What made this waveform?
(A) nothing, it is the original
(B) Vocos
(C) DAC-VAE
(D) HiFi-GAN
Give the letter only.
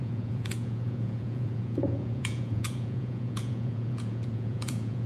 B